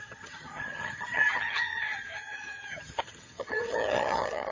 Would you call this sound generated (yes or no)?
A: yes